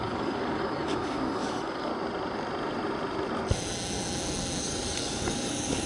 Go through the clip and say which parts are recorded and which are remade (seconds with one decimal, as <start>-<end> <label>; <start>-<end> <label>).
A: 0.0-1.9 remade; 1.9-4.6 recorded; 4.6-5.9 remade